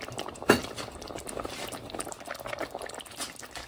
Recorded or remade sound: remade